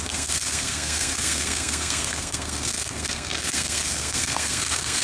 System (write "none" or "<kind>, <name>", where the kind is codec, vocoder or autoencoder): codec, SNAC